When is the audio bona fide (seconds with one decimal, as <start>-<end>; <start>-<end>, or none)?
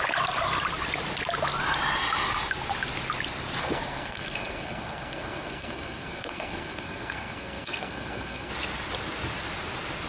0.0-3.6; 8.5-10.1